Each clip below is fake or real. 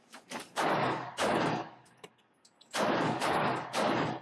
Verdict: fake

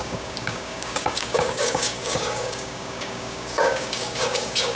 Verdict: fake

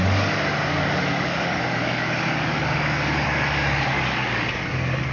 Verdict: fake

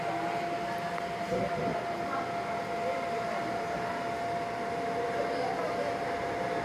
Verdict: real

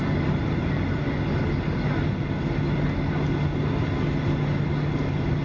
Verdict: real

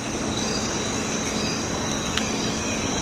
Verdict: fake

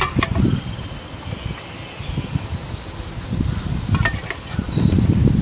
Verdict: real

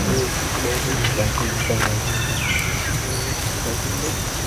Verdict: real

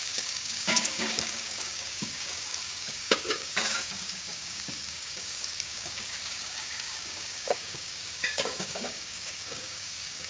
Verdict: fake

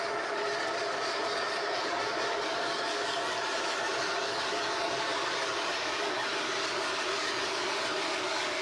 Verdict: fake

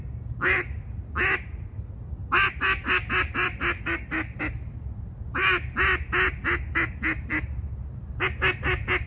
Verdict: real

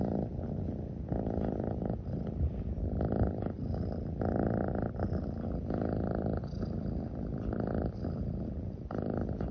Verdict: real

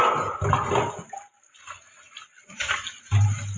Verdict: real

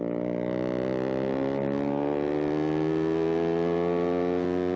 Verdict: real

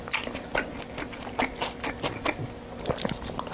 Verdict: real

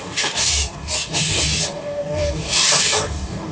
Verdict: fake